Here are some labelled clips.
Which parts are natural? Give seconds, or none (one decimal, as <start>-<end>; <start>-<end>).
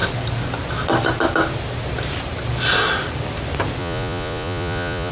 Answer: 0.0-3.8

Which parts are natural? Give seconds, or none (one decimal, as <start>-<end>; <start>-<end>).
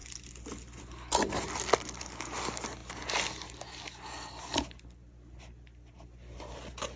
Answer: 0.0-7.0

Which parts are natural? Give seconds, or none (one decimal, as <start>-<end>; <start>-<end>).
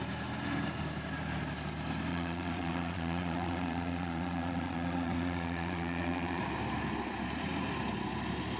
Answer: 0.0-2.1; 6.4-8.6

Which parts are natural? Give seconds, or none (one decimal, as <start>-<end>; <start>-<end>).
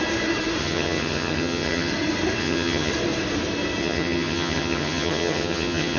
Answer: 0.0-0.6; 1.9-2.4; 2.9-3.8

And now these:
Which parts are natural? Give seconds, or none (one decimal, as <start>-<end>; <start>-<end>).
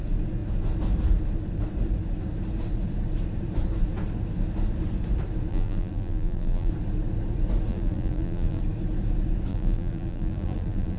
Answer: 0.0-5.5; 6.7-7.7; 8.6-9.5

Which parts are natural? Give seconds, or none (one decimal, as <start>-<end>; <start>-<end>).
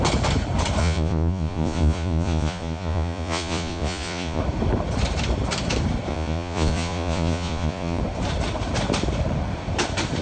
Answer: 0.0-0.8; 4.4-6.1; 8.0-10.2